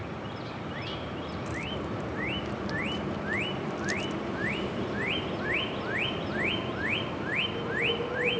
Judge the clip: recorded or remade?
remade